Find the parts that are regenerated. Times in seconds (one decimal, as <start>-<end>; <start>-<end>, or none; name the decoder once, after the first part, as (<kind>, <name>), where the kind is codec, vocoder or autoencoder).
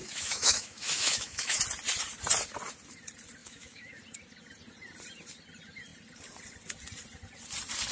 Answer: 0.0-1.6 (autoencoder, DAC-VAE); 3.4-3.9